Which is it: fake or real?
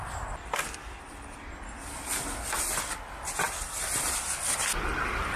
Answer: real